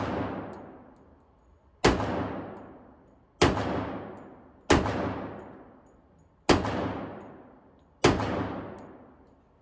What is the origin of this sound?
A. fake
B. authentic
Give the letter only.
B